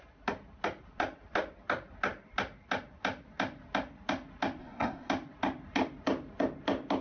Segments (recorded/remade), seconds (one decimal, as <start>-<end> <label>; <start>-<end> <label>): 0.0-4.6 recorded; 4.6-5.1 remade; 5.1-7.0 recorded